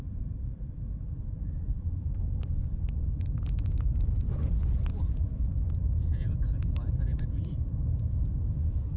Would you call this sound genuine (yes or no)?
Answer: no